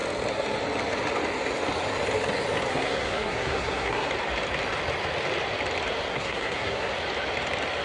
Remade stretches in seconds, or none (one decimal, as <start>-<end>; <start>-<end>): 2.7-4.1; 6.1-6.9